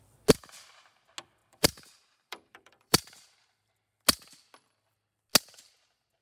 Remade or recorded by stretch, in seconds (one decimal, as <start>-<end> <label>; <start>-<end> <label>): 0.0-1.4 recorded; 1.4-3.6 remade; 3.6-6.2 recorded